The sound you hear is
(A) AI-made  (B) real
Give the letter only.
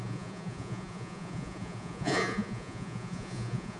A